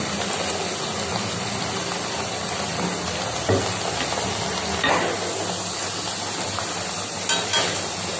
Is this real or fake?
real